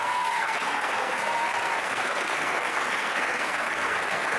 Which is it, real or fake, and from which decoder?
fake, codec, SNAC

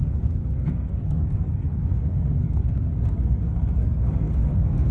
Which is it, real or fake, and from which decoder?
fake, codec, SNAC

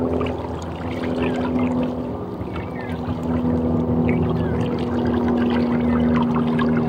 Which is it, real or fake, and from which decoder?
real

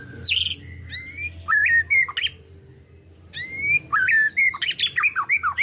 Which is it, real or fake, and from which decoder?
real